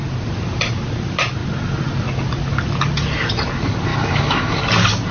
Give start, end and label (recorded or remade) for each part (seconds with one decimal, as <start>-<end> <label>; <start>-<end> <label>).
0.0-3.9 recorded; 3.9-4.5 remade; 4.5-5.1 recorded